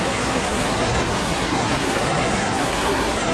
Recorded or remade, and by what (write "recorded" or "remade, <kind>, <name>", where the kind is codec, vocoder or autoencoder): remade, codec, SNAC